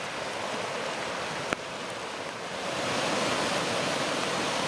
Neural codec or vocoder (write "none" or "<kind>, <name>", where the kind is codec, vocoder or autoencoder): none